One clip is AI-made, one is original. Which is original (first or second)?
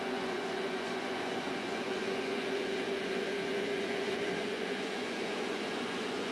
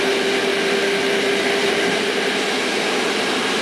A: second